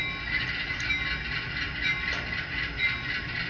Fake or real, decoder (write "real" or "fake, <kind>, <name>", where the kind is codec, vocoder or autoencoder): real